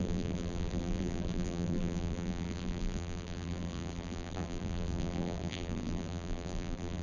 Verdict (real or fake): fake